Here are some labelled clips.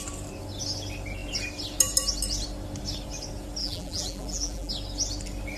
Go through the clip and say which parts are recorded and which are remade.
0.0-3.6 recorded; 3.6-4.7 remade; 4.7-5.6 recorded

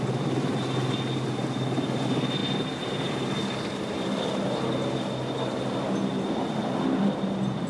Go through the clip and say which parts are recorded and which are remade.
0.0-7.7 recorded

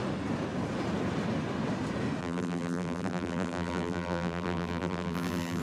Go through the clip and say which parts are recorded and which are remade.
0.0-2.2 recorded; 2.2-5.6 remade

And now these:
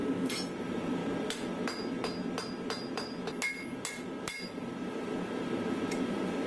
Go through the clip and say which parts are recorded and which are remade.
0.0-0.6 recorded; 0.6-1.0 remade; 1.0-2.9 recorded; 2.9-3.3 remade; 3.3-4.4 recorded; 4.4-6.5 remade

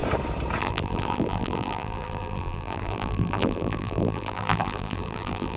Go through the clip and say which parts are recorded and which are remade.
0.0-0.6 recorded; 0.6-5.6 remade

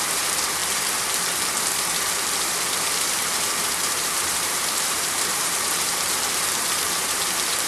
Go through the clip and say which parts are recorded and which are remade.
0.0-0.6 remade; 0.6-1.6 recorded; 1.6-7.7 remade

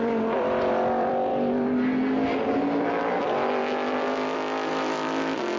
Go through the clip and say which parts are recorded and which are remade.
0.0-1.3 remade; 1.3-4.7 recorded; 4.7-5.6 remade

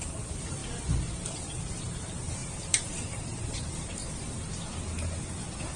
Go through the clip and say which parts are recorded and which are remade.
0.0-0.6 remade; 0.6-1.2 recorded; 1.2-4.0 remade; 4.0-5.8 recorded